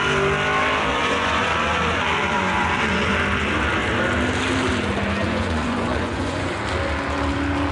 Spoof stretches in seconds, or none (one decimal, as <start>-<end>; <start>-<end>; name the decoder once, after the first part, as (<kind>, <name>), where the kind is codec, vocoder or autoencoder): 0.9-3.1 (vocoder, Vocos); 5.2-6.6